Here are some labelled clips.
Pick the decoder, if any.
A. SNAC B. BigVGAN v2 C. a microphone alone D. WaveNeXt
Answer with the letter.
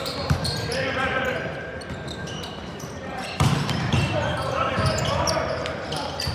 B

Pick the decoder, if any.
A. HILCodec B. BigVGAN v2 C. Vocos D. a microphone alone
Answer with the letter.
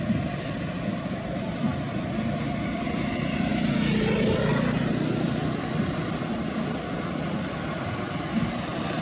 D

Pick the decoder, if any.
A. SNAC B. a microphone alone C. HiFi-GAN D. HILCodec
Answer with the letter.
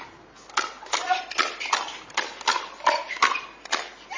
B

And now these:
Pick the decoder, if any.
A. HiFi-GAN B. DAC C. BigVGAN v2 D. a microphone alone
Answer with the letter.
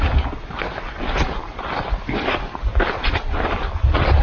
C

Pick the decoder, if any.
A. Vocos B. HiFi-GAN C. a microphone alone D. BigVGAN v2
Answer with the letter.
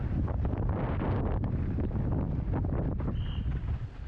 C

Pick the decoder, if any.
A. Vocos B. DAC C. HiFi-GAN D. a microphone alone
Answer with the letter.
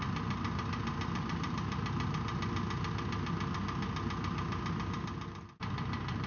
D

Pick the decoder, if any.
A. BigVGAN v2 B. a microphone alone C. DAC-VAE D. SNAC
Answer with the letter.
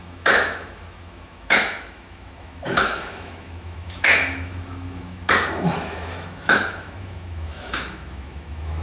C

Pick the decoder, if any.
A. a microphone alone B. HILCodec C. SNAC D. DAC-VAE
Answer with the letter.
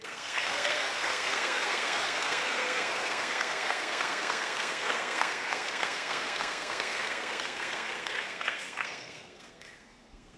C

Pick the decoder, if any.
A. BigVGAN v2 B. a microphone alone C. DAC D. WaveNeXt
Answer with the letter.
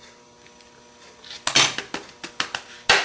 B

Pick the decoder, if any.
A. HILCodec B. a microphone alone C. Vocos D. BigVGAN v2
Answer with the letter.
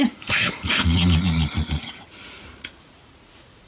C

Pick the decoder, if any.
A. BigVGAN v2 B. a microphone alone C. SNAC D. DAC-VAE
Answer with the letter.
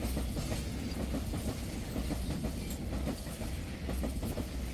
B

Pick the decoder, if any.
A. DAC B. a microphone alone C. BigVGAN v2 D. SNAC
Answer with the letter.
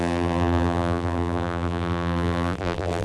C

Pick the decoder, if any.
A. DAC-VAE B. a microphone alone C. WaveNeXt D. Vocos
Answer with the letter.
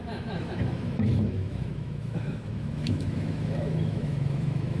A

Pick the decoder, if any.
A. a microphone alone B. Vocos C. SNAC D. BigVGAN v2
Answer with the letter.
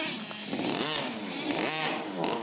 D